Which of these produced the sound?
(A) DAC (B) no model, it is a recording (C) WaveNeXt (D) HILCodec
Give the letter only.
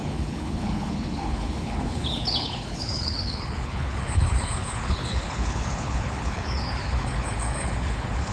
D